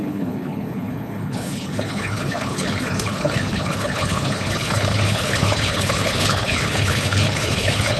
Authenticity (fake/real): fake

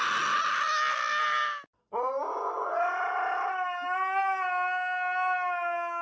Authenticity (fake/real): real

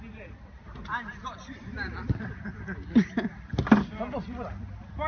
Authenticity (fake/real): real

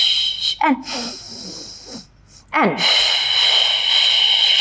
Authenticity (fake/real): real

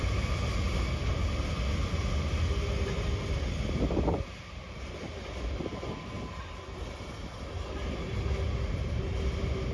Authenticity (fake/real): real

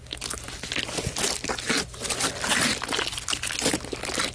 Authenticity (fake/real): real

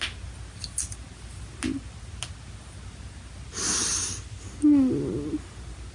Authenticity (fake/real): real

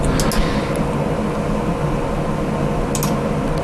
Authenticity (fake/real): real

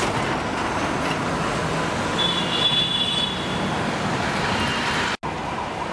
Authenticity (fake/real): real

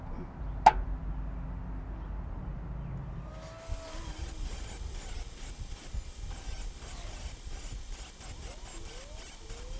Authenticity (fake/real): real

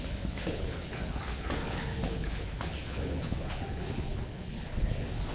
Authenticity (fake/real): fake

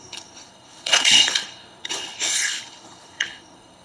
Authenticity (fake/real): fake